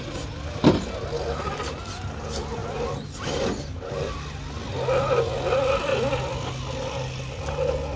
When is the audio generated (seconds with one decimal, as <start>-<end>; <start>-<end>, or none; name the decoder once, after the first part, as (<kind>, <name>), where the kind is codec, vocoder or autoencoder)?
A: 2.6-3.3 (vocoder, BigVGAN v2)